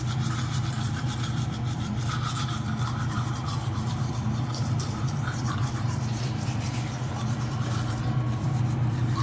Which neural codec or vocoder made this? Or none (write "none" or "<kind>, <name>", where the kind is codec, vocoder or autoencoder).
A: vocoder, BigVGAN v2